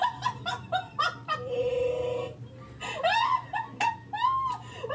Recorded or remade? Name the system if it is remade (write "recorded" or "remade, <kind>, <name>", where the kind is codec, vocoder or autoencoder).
recorded